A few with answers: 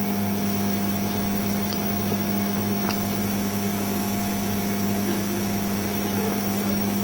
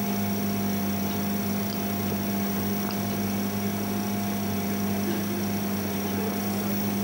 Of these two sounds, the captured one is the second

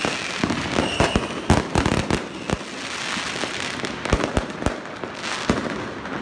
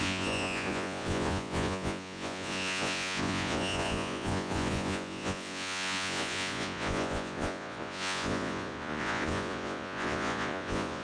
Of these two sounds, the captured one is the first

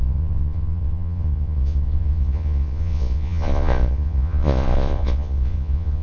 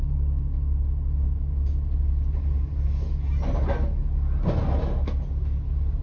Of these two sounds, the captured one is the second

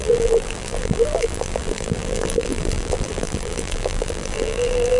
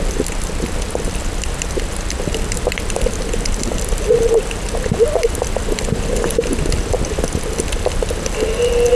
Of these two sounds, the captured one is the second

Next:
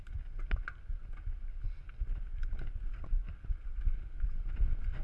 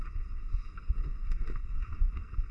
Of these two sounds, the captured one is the first